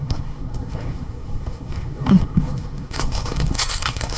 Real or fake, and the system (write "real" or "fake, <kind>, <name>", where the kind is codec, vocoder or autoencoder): fake, codec, SNAC